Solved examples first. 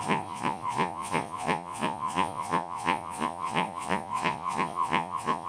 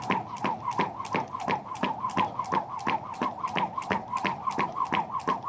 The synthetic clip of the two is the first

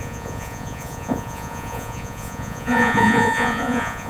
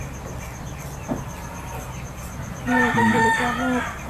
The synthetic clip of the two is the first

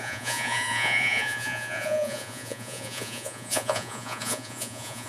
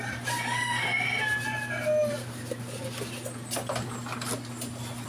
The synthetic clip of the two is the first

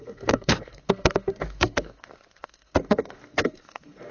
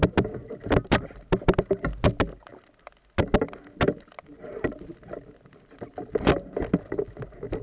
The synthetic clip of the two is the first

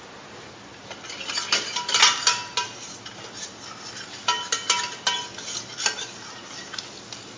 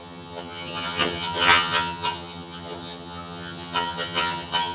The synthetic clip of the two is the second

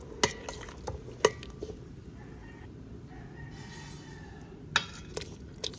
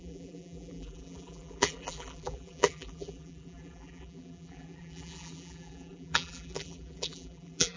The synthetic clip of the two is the second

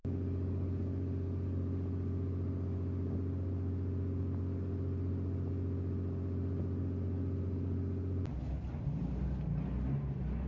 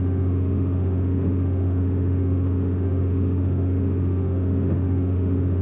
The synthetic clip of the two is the second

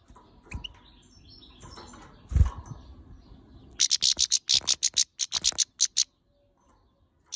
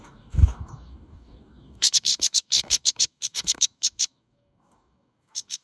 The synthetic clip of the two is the second